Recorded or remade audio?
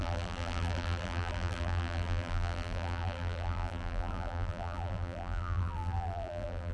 remade